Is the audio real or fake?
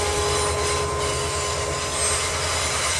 real